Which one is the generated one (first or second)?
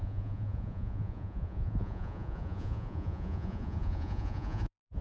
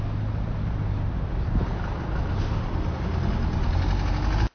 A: first